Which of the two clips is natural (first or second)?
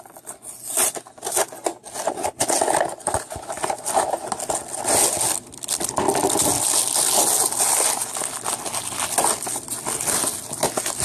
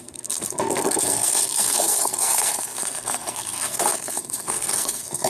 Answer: first